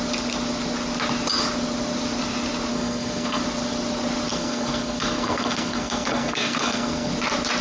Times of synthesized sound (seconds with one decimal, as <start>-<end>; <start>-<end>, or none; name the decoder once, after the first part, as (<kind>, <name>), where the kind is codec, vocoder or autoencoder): 2.7-3.4 (codec, SNAC); 4.3-7.1